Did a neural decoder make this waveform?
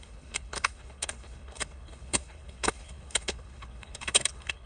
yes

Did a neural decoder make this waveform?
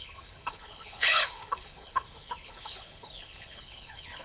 yes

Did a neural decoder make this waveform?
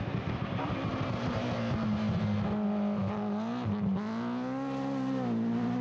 no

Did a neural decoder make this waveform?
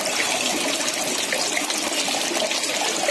no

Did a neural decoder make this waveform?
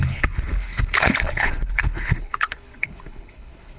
yes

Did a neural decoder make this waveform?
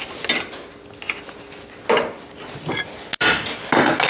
no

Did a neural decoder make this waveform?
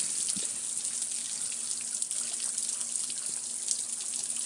no